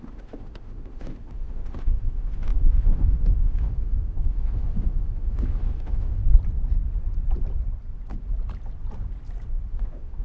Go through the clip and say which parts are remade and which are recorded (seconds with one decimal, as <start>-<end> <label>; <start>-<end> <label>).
0.0-6.2 remade; 6.2-9.7 recorded; 9.7-10.2 remade